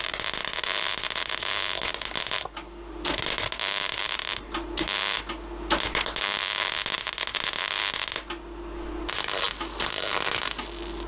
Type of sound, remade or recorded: recorded